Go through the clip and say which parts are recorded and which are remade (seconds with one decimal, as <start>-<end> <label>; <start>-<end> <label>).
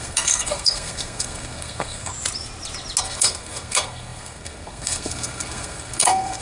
0.0-2.1 remade; 2.1-3.0 recorded; 3.0-6.4 remade